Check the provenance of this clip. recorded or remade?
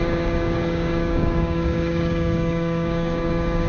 remade